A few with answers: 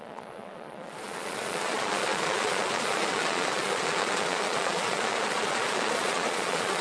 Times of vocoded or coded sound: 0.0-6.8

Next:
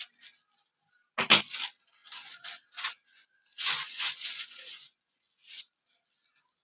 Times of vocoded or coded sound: 2.0-5.6

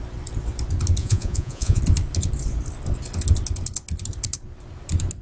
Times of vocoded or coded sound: 1.0-1.8

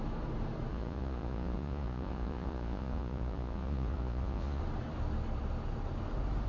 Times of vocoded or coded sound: 0.7-4.6

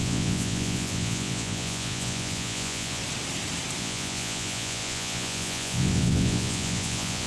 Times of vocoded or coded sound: 0.0-3.0; 3.8-7.3

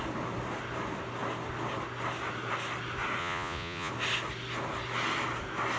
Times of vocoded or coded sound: 3.2-3.9

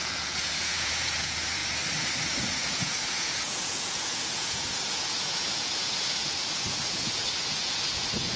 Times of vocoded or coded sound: 0.0-1.6; 2.4-8.4

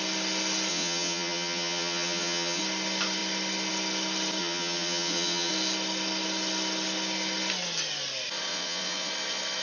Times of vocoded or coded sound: 0.7-2.6; 4.4-5.5; 8.5-9.1